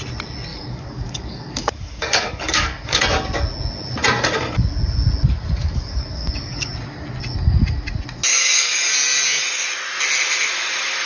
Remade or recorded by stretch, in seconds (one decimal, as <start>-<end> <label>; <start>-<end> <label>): 0.0-0.5 recorded; 0.5-3.0 remade; 3.0-5.6 recorded; 5.6-6.7 remade; 6.7-8.3 recorded; 8.3-8.9 remade; 8.9-11.1 recorded